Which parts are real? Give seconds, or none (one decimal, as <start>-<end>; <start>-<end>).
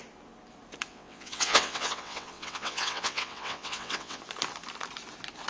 0.0-0.9; 4.2-5.5